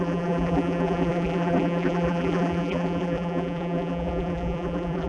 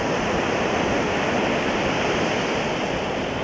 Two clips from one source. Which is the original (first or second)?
second